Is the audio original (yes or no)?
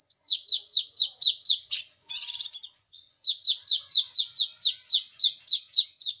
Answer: no